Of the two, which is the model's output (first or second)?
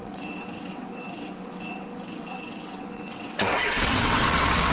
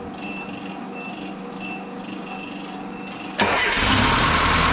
first